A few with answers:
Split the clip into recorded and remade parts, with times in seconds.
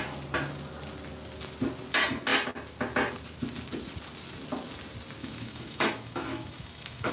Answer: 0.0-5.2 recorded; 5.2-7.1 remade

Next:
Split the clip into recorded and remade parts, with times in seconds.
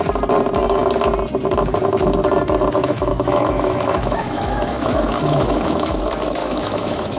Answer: 0.0-2.8 recorded; 2.8-6.0 remade; 6.0-6.4 recorded; 6.4-7.2 remade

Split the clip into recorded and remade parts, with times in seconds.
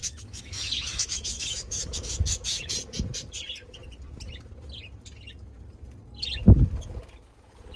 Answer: 0.0-2.7 remade; 2.7-7.8 recorded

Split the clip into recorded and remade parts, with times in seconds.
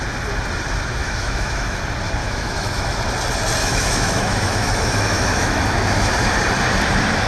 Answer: 0.0-1.0 recorded; 1.0-1.8 remade; 1.8-2.2 recorded; 2.2-3.0 remade; 3.0-3.6 recorded; 3.6-6.1 remade; 6.1-7.3 recorded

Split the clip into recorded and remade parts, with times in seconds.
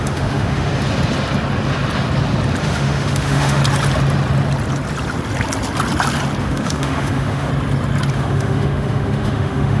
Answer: 0.0-0.7 remade; 0.7-2.6 recorded; 2.6-3.6 remade; 3.6-6.4 recorded; 6.4-7.5 remade; 7.5-8.1 recorded; 8.1-9.8 remade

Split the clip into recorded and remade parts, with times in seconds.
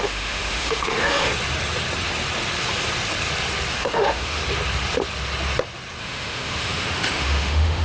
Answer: 0.0-1.3 remade; 1.3-3.7 recorded; 3.7-4.4 remade; 4.4-6.0 recorded; 6.0-7.8 remade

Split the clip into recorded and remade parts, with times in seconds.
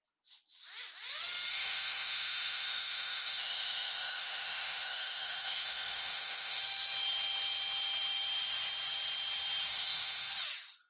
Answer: 0.0-1.5 recorded; 1.5-6.6 remade; 6.6-9.7 recorded; 9.7-10.3 remade; 10.3-10.9 recorded